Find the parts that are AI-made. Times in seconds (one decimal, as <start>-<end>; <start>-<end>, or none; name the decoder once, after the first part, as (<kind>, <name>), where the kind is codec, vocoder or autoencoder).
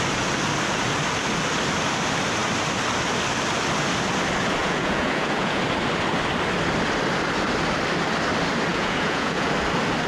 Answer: 4.6-5.6 (vocoder, Vocos); 8.7-9.5